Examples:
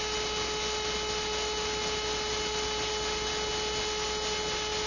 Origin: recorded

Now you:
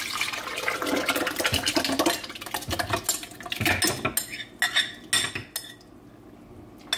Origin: recorded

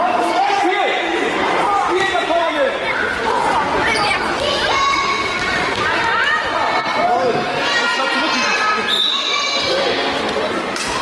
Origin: remade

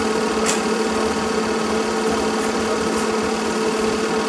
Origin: recorded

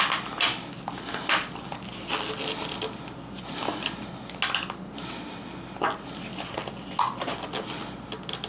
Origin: recorded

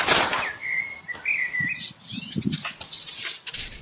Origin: remade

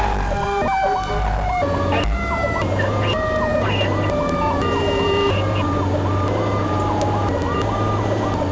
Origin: remade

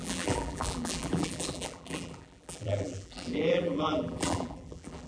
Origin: remade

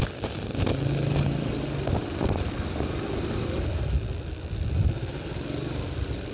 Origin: remade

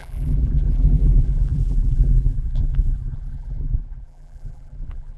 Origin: remade